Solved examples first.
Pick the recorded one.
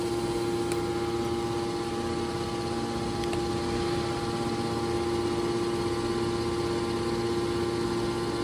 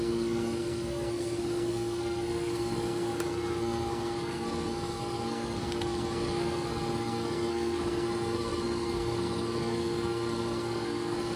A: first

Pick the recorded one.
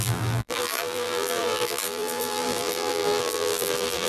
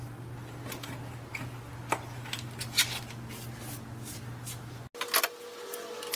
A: second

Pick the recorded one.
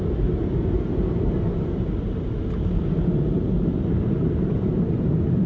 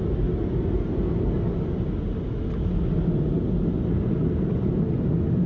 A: second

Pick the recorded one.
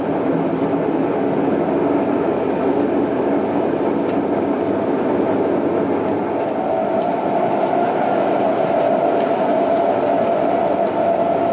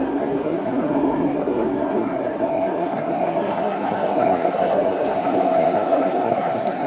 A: first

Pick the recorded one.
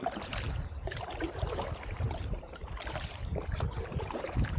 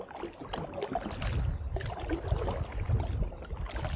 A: second